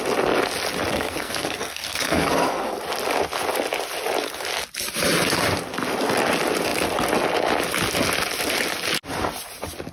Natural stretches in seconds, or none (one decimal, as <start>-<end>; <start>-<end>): 0.0-0.9; 2.8-9.9